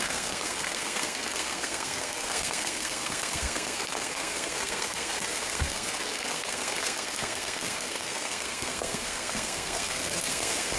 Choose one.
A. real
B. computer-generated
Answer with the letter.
B